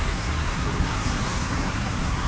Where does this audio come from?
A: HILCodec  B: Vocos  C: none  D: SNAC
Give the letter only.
D